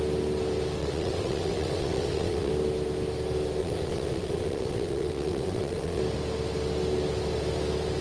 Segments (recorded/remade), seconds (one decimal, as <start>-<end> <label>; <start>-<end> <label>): 0.0-0.8 recorded; 0.8-2.5 remade; 2.5-3.6 recorded; 3.6-6.0 remade; 6.0-8.0 recorded